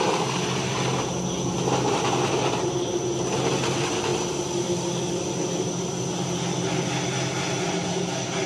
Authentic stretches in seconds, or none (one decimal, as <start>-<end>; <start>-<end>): 0.0-8.5